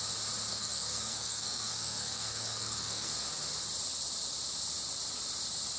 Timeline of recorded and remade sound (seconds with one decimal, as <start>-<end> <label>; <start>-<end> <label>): 0.0-0.5 recorded; 0.5-3.1 remade; 3.1-5.8 recorded

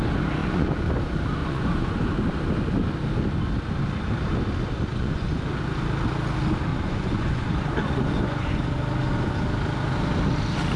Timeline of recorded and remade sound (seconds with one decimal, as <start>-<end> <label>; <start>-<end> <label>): 0.0-0.4 recorded; 0.4-0.9 remade; 0.9-1.4 recorded; 1.4-2.0 remade; 2.0-4.9 recorded; 4.9-5.4 remade; 5.4-6.7 recorded; 6.7-8.6 remade; 8.6-10.8 recorded